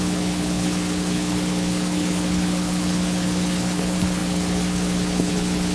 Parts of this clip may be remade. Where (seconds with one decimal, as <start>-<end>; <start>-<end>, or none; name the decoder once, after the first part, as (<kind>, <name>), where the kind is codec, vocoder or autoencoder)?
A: 0.0-5.7 (codec, HILCodec)